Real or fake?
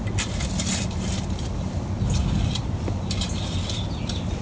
real